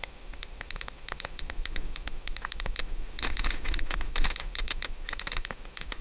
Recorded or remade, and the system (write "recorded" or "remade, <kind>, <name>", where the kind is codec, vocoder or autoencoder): remade, autoencoder, DAC-VAE